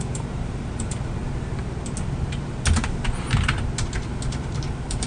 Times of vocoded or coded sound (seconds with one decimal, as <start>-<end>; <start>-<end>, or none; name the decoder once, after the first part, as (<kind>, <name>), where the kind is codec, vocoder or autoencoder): 0.0-1.2 (vocoder, BigVGAN v2); 4.3-5.1